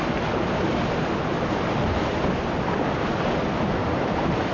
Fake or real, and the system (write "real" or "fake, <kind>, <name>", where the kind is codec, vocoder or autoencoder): real